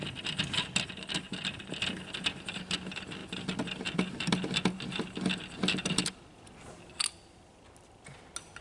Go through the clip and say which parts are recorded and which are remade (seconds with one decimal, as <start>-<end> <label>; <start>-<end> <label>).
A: 0.0-8.6 recorded